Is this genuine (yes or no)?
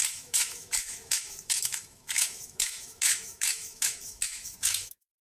no